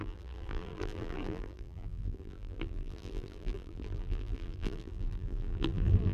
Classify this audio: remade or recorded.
remade